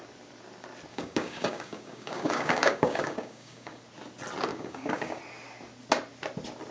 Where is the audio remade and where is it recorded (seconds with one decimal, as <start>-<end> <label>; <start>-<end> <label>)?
0.0-0.9 recorded; 0.9-3.8 remade; 3.8-4.5 recorded; 4.5-5.2 remade; 5.2-6.7 recorded